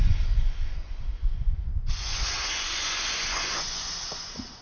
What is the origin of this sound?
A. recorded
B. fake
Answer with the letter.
B